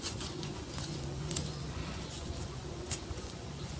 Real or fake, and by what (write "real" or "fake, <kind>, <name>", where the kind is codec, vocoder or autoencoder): fake, vocoder, Vocos